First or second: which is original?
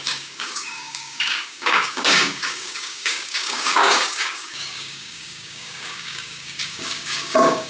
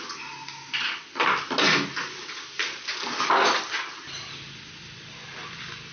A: second